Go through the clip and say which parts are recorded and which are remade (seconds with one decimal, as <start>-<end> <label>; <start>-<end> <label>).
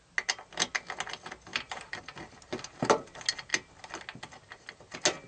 0.0-1.5 recorded; 1.5-2.0 remade; 2.0-5.3 recorded